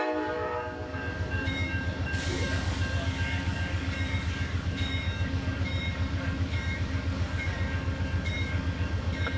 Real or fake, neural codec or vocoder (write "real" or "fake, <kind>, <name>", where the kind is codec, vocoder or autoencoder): fake, codec, DAC